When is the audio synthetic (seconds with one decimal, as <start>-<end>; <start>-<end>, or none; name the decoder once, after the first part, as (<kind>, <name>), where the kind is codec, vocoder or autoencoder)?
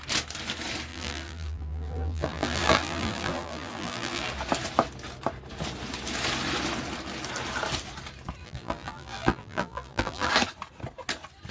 0.9-4.3 (vocoder, BigVGAN v2); 8.4-10.3